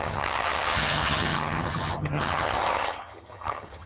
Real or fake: fake